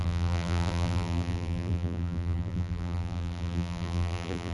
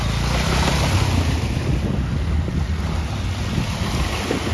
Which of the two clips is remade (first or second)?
first